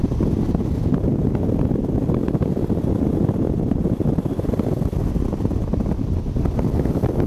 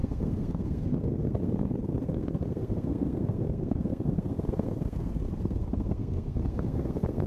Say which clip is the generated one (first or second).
second